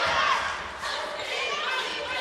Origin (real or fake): real